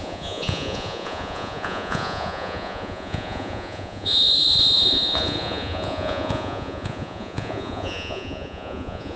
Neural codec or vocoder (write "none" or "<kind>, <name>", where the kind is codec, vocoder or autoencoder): vocoder, Vocos